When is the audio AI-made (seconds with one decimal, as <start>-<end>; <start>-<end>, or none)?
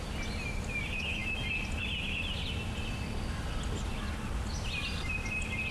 none